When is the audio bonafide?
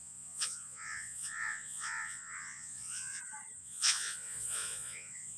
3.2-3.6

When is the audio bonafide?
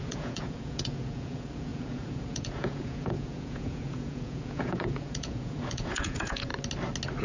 6.5-7.2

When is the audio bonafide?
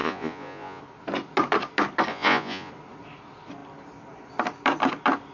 0.8-2.1; 2.7-5.3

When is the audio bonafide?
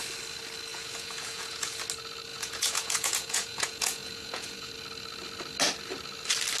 0.0-0.7; 1.8-2.3; 4.7-6.6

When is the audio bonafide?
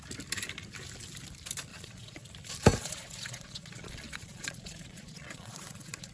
0.0-1.7; 2.3-2.8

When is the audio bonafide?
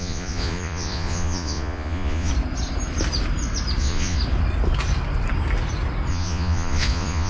2.3-3.8; 4.2-6.1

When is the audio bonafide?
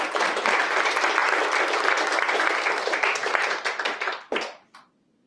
0.0-5.3